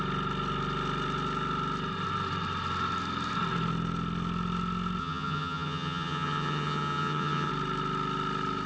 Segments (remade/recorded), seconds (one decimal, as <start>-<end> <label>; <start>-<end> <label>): 0.0-5.0 recorded; 5.0-7.5 remade; 7.5-8.7 recorded